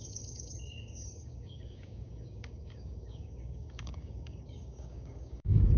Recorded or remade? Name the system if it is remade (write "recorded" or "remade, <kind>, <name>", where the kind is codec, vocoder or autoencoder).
remade, codec, DAC